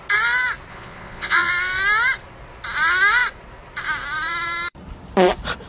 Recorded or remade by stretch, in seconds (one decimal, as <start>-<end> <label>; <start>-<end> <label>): 0.0-0.7 recorded; 0.7-1.5 remade; 1.5-5.7 recorded